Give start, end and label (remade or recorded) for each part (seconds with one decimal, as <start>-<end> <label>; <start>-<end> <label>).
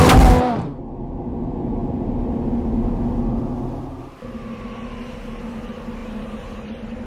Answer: 0.0-7.1 recorded